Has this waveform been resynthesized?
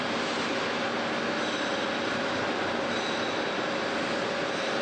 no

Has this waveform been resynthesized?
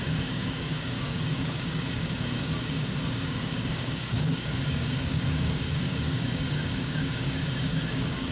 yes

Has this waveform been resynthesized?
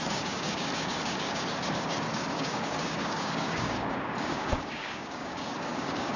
yes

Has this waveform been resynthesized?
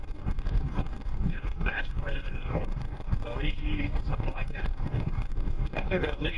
yes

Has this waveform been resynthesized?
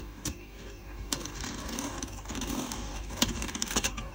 yes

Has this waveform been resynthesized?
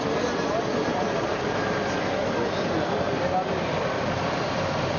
no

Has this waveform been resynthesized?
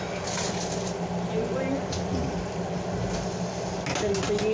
no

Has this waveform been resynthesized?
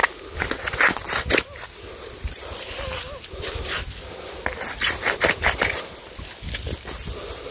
no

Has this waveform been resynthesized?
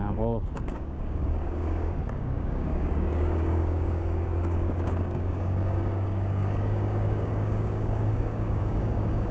yes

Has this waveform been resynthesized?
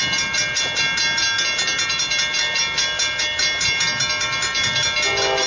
no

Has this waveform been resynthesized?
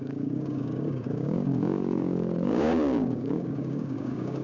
yes